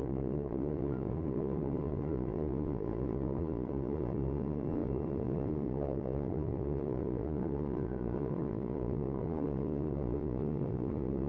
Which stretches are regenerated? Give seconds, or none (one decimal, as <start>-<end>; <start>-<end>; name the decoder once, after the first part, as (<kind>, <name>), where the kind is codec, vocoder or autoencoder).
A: 0.0-11.3 (vocoder, Vocos)